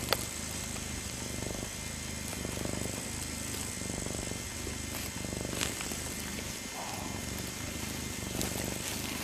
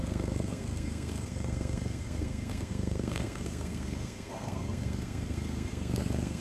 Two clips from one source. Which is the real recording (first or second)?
first